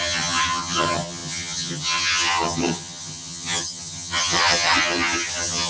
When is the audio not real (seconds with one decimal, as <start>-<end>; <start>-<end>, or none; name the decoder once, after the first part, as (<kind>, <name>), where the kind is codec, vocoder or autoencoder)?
0.0-5.7 (vocoder, HiFi-GAN)